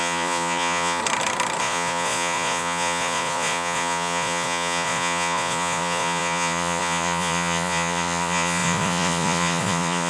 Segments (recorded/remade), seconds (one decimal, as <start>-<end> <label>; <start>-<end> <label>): 0.0-1.0 remade; 1.0-1.6 recorded; 1.6-10.1 remade